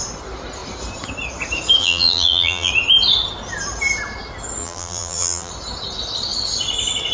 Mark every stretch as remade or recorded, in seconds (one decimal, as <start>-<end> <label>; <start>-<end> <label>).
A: 0.0-1.8 recorded; 1.8-2.7 remade; 2.7-4.6 recorded; 4.6-5.5 remade; 5.5-7.1 recorded